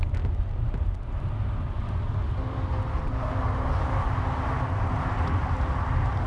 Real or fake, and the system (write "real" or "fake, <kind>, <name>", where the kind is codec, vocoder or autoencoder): real